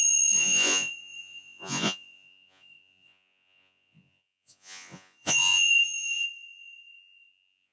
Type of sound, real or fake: fake